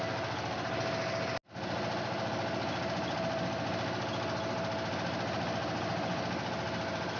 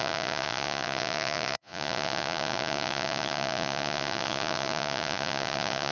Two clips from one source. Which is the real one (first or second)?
first